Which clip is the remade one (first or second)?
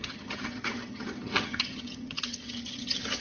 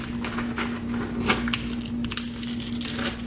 first